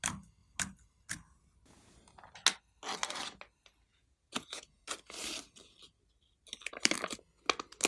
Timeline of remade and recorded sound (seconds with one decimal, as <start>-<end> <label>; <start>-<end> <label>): 0.0-3.9 recorded; 3.9-4.8 remade; 4.8-7.9 recorded